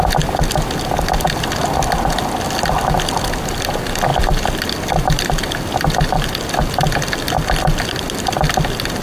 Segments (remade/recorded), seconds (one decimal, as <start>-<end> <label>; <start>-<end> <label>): 0.0-9.0 recorded